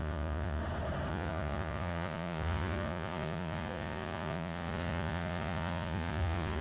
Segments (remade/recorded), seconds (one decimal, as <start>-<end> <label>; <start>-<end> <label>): 0.0-0.6 remade; 0.6-1.1 recorded; 1.1-6.6 remade